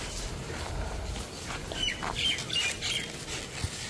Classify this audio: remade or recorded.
recorded